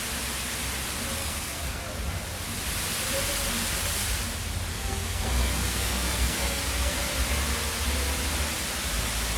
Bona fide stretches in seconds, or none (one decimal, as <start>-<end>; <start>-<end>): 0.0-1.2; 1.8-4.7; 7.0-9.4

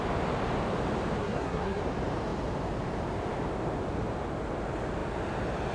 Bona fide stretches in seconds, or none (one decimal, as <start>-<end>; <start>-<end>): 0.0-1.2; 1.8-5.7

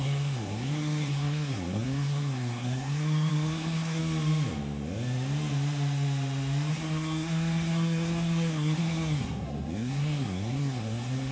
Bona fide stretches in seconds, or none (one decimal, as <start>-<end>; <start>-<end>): 4.0-6.7

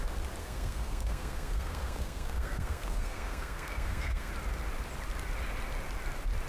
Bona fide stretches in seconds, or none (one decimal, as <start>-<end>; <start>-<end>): 0.0-0.4; 4.3-6.5